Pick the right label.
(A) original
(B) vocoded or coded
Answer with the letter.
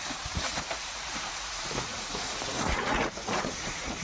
B